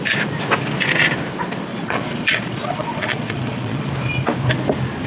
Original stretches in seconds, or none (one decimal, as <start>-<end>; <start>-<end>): 0.0-1.7; 3.9-5.1